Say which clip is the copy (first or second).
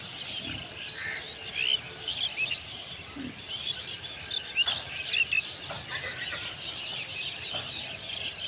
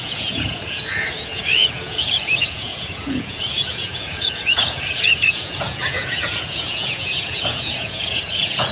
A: second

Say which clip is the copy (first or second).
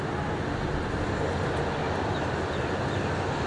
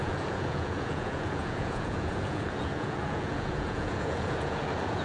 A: second